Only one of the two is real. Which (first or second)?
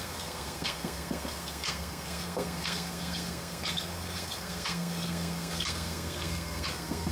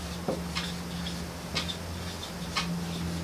second